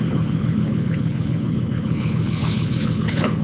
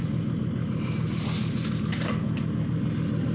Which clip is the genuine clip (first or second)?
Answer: second